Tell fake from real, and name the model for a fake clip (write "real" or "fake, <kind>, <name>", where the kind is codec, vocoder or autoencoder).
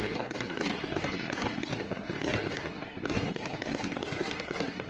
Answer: fake, codec, SNAC